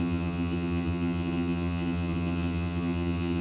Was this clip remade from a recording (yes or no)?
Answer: yes